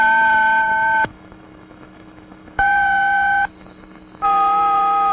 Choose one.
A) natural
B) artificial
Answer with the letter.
B